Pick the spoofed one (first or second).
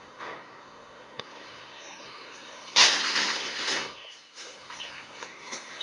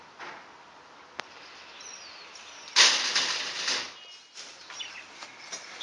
first